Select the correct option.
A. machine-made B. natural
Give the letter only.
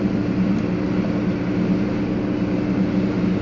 B